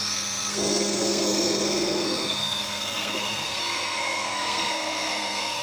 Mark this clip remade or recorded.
remade